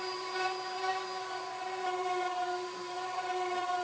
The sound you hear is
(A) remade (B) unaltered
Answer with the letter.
A